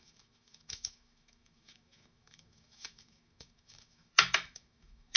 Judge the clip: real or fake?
fake